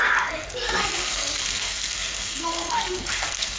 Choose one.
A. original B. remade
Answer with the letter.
B